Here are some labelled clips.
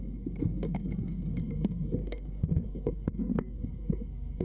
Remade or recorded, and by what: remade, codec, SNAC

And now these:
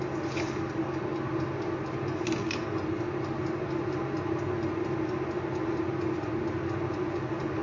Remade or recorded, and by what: recorded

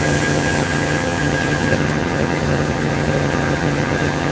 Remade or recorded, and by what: remade, vocoder, HiFi-GAN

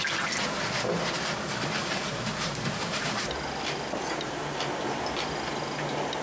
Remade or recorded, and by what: recorded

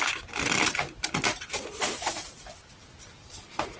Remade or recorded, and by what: recorded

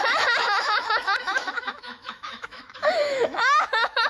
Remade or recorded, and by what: remade, autoencoder, DAC-VAE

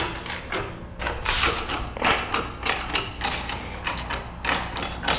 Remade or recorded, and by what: recorded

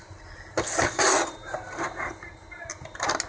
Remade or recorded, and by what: recorded